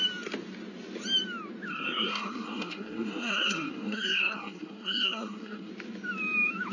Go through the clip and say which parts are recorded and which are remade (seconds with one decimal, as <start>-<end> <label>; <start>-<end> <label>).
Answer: 0.0-1.7 recorded; 1.7-5.7 remade; 5.7-6.7 recorded